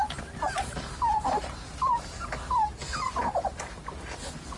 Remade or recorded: recorded